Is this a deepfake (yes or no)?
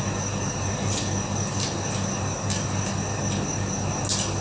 no